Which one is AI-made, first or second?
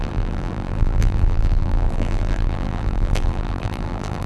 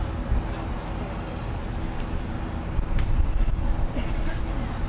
first